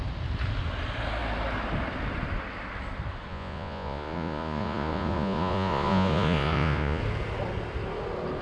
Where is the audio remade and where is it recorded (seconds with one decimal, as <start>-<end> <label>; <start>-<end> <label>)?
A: 0.0-3.3 recorded; 3.3-7.0 remade; 7.0-8.4 recorded